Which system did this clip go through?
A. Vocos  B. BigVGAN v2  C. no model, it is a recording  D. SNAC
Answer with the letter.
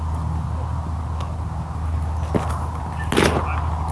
C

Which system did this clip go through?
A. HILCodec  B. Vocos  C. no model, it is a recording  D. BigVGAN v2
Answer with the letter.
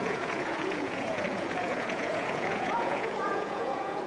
B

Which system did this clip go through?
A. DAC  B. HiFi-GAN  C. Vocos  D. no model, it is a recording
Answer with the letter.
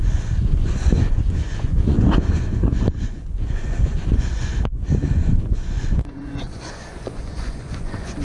C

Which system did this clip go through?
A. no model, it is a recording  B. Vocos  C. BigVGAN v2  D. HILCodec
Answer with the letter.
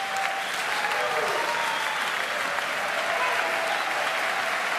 A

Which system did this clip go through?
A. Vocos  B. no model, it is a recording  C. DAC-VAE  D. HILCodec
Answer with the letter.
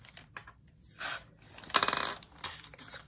B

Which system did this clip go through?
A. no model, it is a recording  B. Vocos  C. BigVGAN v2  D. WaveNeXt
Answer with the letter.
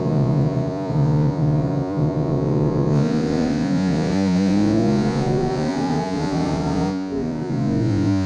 B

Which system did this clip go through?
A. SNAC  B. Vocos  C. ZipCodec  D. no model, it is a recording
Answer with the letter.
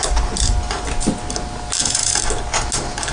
D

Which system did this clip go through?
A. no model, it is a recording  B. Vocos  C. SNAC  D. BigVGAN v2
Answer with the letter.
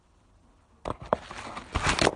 A